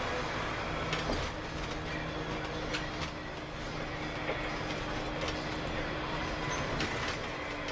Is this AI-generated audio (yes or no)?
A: no